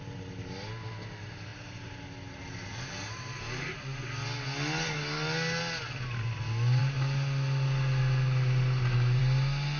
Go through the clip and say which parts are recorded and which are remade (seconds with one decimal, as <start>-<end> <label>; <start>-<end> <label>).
0.0-9.8 recorded